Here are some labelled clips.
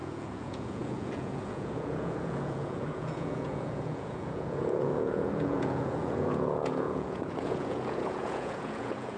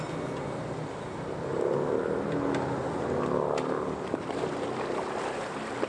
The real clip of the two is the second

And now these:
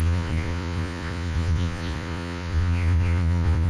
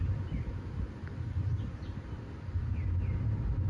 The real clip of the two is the second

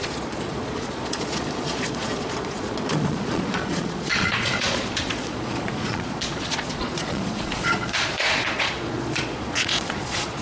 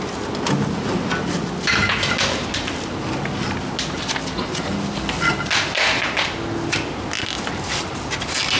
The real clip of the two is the second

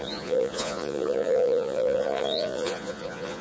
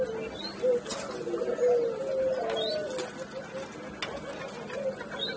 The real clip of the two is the second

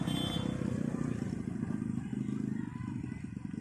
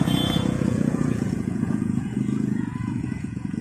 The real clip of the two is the first